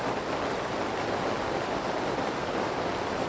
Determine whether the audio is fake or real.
real